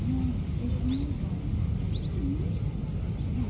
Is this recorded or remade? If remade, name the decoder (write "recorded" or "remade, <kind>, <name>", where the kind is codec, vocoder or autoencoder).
recorded